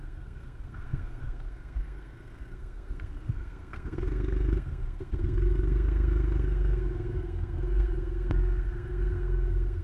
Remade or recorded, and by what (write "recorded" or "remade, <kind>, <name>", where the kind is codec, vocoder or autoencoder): remade, codec, SNAC